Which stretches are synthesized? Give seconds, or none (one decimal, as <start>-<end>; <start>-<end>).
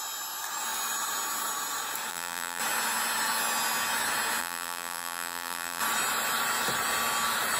2.1-2.6; 4.4-5.8